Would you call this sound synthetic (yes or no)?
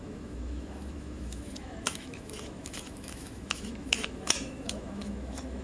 yes